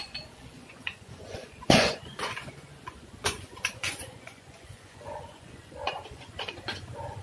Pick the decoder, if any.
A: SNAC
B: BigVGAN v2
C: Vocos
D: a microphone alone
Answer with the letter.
C